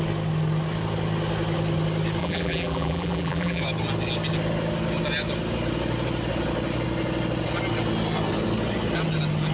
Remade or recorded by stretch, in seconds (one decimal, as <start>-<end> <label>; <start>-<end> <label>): 0.0-2.2 recorded; 2.2-3.6 remade; 3.6-9.5 recorded